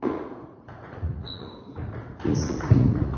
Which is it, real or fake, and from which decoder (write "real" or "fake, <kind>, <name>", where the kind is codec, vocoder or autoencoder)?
fake, vocoder, Vocos